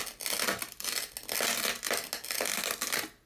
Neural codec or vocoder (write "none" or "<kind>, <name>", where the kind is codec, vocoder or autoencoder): none